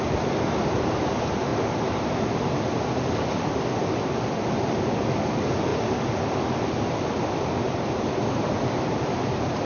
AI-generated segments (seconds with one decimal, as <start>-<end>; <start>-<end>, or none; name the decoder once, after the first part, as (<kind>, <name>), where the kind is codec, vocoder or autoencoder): 0.0-5.7 (vocoder, BigVGAN v2); 7.3-9.7